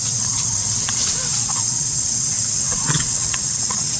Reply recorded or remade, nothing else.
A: remade